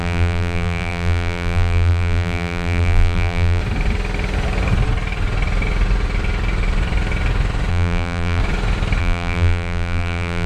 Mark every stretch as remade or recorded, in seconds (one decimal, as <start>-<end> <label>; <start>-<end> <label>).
0.0-3.6 remade; 3.6-7.7 recorded; 7.7-8.4 remade; 8.4-9.0 recorded; 9.0-10.5 remade